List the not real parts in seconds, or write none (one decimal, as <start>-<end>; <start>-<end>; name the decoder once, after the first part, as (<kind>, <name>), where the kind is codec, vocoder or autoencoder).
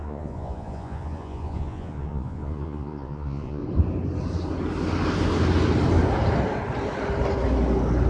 0.0-3.6 (vocoder, Vocos)